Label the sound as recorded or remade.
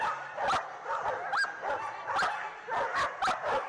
recorded